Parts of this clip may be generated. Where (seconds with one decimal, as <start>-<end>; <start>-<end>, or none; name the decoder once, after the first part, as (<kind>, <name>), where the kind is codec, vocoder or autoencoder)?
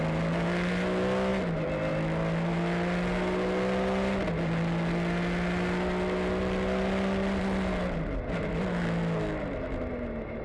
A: none